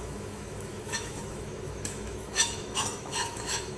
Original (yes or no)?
no